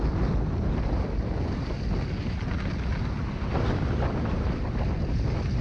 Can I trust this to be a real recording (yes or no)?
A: yes